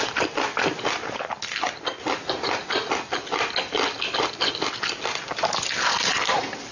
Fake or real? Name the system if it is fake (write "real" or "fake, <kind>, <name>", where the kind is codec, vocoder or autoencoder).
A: real